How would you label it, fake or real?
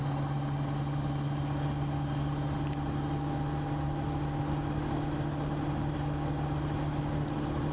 real